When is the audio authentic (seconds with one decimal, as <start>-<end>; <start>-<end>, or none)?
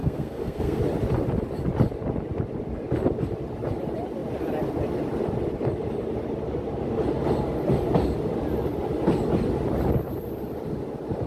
0.8-11.3